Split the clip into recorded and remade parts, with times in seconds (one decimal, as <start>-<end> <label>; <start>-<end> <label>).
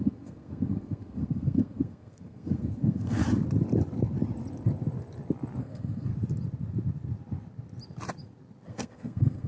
0.0-3.2 remade; 3.2-5.6 recorded; 5.6-6.1 remade; 6.1-8.7 recorded; 8.7-9.5 remade